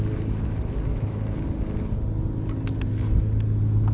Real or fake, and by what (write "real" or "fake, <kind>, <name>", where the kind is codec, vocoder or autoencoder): real